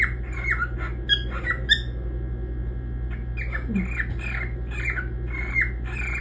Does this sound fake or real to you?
real